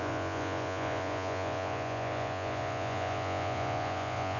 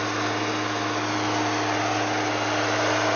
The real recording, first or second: second